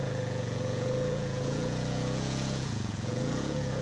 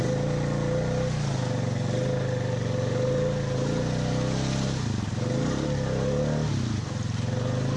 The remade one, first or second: first